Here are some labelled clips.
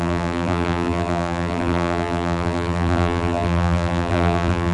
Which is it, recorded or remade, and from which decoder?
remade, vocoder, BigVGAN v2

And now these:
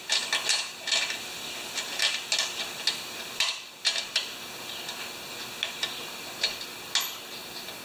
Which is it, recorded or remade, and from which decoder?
recorded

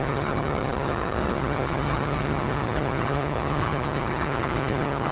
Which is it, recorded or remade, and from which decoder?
remade, vocoder, HiFi-GAN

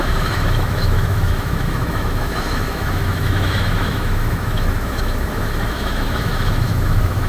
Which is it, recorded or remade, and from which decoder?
remade, autoencoder, DAC-VAE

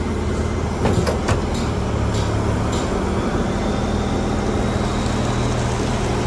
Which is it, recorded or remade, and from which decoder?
recorded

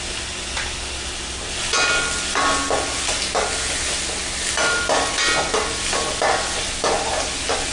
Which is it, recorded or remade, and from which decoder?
recorded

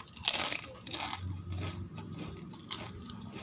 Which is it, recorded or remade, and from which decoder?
recorded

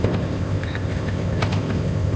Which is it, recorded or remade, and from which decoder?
remade, codec, ZipCodec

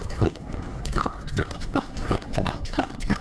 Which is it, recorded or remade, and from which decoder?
remade, codec, SNAC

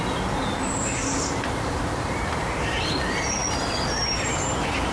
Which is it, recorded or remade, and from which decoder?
recorded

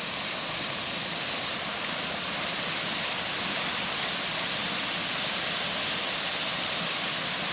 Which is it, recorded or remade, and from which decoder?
recorded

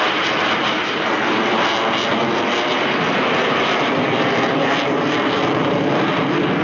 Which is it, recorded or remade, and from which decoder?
recorded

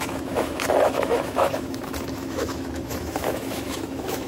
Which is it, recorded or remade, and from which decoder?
remade, autoencoder, DAC-VAE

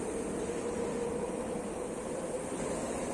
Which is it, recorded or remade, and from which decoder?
remade, vocoder, BigVGAN v2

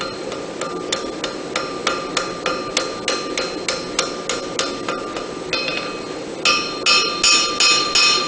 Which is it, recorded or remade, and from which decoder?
recorded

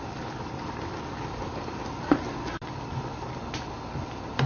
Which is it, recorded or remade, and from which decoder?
recorded